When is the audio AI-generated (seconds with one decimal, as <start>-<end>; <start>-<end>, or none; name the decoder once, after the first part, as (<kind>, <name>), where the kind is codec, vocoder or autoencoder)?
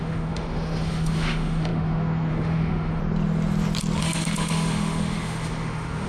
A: 0.0-3.0 (autoencoder, DAC-VAE); 4.0-6.1